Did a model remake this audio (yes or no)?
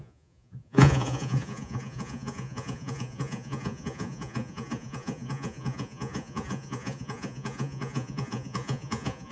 yes